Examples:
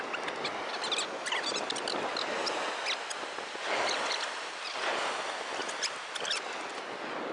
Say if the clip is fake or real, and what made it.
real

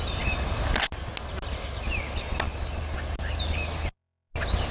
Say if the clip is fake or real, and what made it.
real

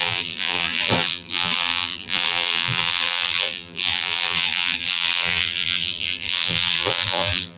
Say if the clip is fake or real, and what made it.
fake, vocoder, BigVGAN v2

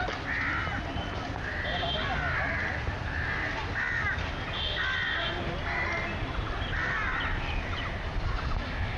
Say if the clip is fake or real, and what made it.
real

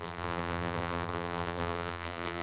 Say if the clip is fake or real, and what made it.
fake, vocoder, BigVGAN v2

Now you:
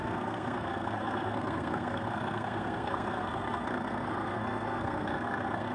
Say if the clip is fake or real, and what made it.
fake, codec, SNAC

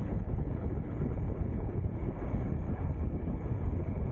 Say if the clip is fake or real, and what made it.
fake, codec, HILCodec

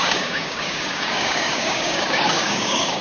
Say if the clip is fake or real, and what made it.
fake, codec, DAC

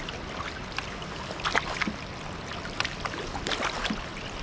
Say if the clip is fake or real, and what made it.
real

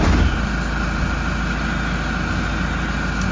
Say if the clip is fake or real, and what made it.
real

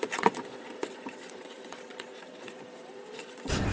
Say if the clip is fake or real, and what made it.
fake, vocoder, Vocos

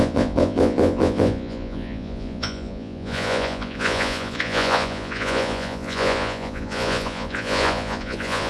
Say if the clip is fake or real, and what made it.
fake, vocoder, Vocos